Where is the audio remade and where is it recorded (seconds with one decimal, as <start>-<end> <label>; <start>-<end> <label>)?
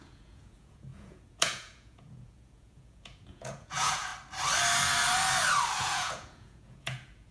0.0-4.1 remade; 4.1-5.8 recorded; 5.8-7.3 remade